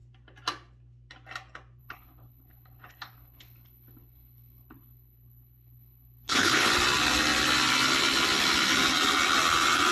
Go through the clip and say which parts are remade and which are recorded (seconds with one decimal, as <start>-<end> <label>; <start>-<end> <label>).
0.0-1.8 recorded; 1.8-6.7 remade; 6.7-9.9 recorded